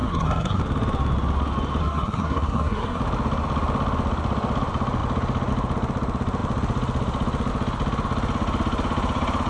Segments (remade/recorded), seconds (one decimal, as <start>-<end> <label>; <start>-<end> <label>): 0.0-0.6 remade; 0.6-1.8 recorded; 1.8-3.0 remade; 3.0-9.5 recorded